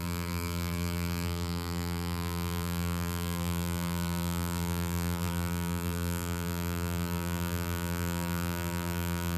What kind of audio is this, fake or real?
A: fake